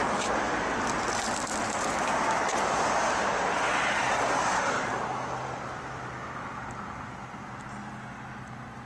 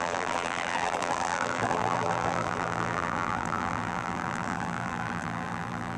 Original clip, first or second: first